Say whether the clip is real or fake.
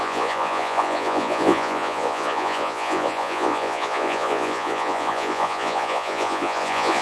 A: fake